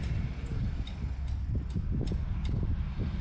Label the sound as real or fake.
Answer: real